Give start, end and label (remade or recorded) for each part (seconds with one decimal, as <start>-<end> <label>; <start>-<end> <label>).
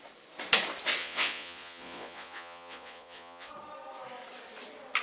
0.0-1.0 recorded; 1.0-3.5 remade; 3.5-5.0 recorded